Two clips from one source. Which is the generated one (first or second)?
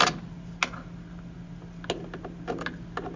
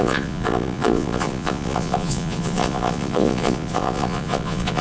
second